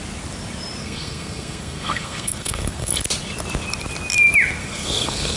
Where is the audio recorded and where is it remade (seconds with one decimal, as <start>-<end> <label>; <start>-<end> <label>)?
0.0-0.8 recorded; 0.8-2.9 remade; 2.9-4.6 recorded; 4.6-5.4 remade

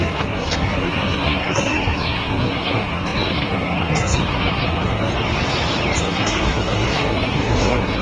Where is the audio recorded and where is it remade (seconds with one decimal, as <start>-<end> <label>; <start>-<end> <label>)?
0.0-5.1 remade; 5.1-6.0 recorded; 6.0-8.0 remade

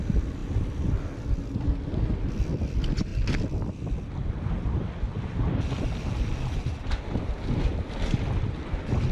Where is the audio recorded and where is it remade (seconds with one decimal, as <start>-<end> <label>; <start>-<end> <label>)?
0.0-9.1 recorded

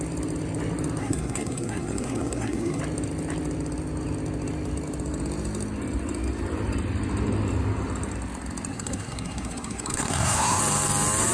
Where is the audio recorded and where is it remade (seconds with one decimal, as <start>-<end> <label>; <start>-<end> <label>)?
0.0-1.0 recorded; 1.0-2.8 remade; 2.8-8.7 recorded; 8.7-10.6 remade; 10.6-11.3 recorded

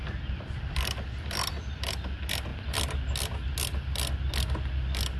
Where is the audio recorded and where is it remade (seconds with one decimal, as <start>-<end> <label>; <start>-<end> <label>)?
0.0-5.2 recorded

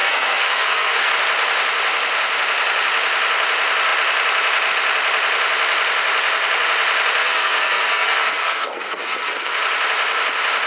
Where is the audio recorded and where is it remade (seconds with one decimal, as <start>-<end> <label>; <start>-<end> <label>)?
0.0-1.1 remade; 1.1-7.2 recorded; 7.2-9.6 remade; 9.6-10.7 recorded

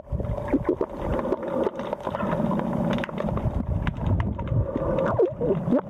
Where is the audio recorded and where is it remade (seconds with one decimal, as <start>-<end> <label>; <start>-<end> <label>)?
0.0-5.9 recorded

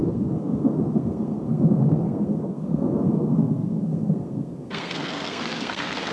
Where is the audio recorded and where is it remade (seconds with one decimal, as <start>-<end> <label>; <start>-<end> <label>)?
0.0-6.1 remade